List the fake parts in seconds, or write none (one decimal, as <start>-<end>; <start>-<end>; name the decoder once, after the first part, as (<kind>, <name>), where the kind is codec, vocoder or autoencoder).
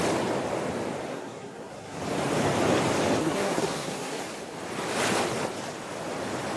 1.1-2.0 (codec, SNAC); 3.2-4.2